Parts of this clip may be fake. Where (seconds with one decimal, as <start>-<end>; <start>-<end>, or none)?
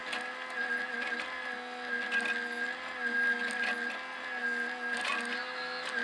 none